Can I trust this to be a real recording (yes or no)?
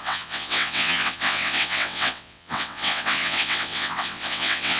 no